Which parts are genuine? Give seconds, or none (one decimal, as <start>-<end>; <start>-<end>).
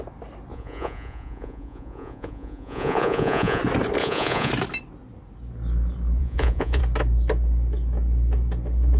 0.0-0.5; 3.6-4.0; 4.5-6.2; 6.8-9.0